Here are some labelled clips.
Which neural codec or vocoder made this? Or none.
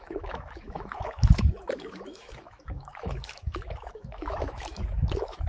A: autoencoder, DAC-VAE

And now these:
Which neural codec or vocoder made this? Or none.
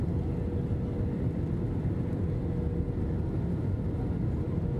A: none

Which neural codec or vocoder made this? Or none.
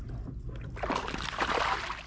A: none